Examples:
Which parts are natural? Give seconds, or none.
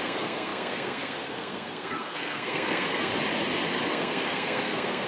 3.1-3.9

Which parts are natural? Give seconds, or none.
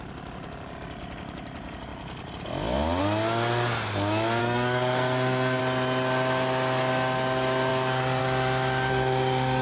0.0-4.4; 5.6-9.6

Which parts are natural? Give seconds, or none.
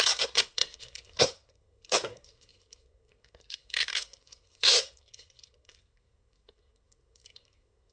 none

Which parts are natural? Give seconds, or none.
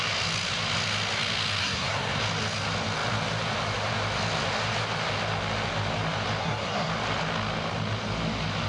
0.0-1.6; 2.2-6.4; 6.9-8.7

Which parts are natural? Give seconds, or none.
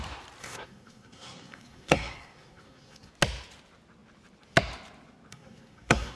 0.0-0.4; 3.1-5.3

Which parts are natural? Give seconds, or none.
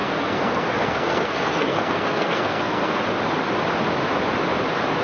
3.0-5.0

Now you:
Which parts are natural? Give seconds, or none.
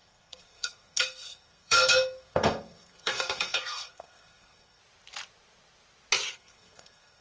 4.8-6.3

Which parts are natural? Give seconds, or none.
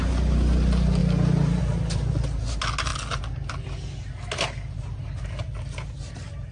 0.0-6.5